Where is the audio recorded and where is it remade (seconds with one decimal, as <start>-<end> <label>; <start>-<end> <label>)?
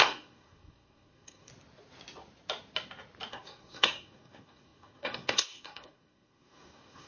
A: 0.0-1.5 remade; 1.5-3.3 recorded; 3.3-7.1 remade